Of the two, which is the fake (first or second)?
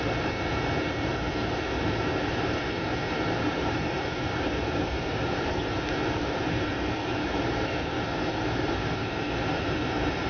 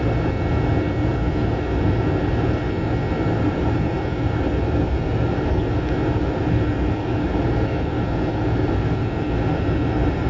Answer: first